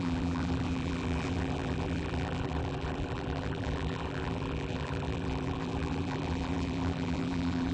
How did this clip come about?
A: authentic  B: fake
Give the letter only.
B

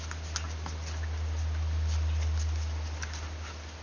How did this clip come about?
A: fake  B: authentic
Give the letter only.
B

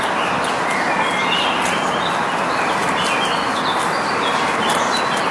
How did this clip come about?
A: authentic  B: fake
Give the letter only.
A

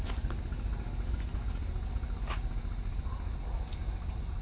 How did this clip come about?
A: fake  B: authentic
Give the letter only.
B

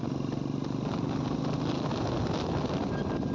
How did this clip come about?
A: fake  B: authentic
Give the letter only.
B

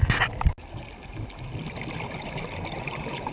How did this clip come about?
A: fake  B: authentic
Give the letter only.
B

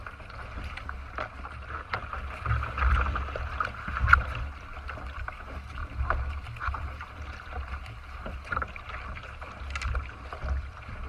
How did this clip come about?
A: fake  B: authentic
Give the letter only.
B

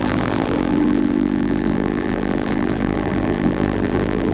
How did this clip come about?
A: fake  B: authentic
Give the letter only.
A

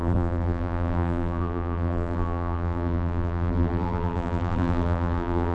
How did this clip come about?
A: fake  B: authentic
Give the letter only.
A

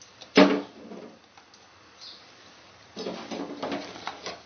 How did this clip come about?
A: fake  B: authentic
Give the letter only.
B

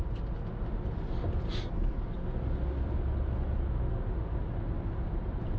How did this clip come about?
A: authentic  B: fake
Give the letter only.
A